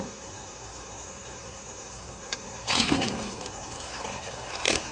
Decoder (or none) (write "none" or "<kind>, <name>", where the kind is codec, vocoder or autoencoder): codec, SNAC